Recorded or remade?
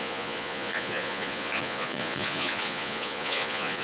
remade